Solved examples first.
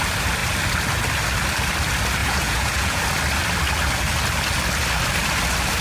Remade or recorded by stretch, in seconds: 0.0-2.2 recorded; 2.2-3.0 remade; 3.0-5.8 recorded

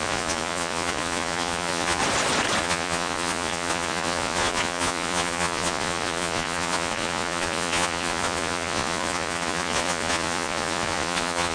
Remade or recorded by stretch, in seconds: 0.0-2.0 remade; 2.0-2.6 recorded; 2.6-11.5 remade

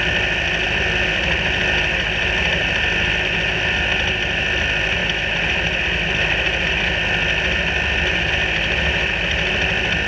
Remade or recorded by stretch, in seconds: 0.0-10.1 recorded

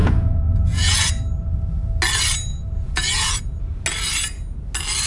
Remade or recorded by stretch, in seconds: 0.0-1.1 remade; 1.1-2.5 recorded; 2.5-3.4 remade; 3.4-5.1 recorded

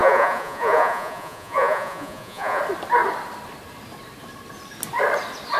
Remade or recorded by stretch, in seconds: 0.0-2.6 remade; 2.6-5.6 recorded

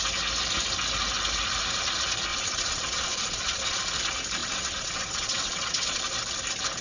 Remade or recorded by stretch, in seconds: 0.0-2.3 recorded; 2.3-3.9 remade; 3.9-4.4 recorded; 4.4-6.0 remade; 6.0-6.8 recorded